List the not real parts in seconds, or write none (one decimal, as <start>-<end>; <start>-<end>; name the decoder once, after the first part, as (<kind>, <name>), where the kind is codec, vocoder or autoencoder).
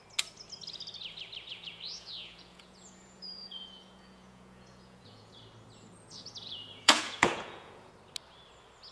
1.5-5.4 (vocoder, Vocos); 6.1-7.9